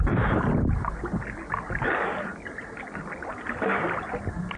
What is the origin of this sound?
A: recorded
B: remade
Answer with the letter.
A